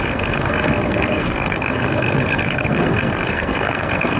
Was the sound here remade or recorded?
remade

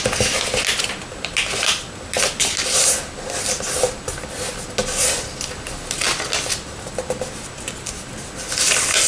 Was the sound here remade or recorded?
recorded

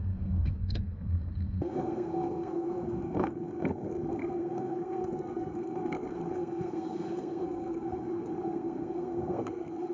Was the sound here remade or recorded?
remade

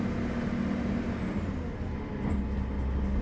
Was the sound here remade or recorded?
recorded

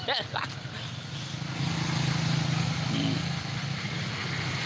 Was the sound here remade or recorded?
recorded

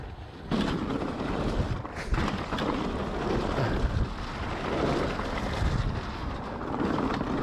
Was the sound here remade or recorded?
recorded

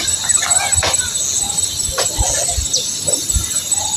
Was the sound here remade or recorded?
recorded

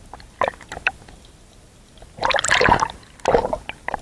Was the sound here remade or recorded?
recorded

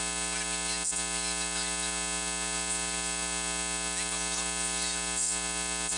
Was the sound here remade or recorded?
recorded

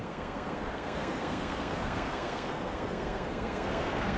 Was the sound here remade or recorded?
remade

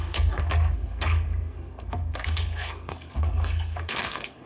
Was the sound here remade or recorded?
remade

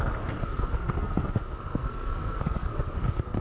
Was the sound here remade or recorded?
remade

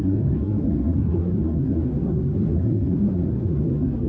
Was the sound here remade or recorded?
remade